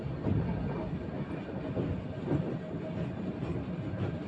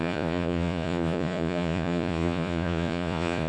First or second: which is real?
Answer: first